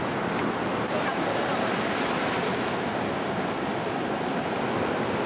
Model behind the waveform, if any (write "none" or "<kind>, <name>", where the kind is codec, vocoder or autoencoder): none